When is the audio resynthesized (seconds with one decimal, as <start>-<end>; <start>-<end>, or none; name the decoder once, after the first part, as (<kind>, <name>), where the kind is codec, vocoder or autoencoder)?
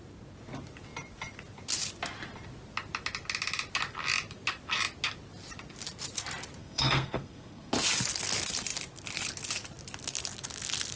6.6-7.7 (codec, SNAC)